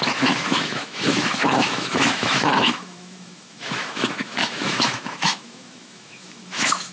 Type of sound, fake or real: fake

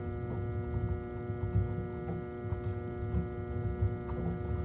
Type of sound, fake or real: real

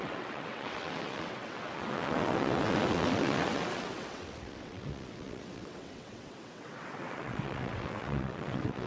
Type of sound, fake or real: fake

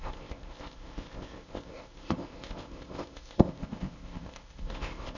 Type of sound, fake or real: fake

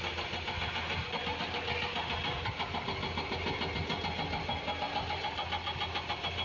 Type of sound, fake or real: real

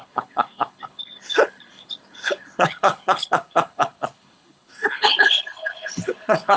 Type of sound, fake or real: fake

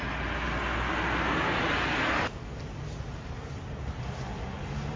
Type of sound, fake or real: real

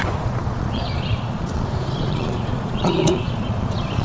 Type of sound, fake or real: fake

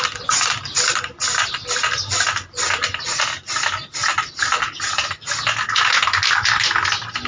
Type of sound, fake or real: real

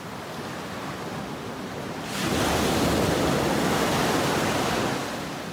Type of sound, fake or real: real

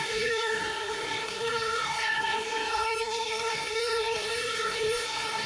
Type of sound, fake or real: fake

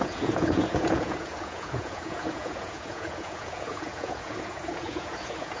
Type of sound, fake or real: fake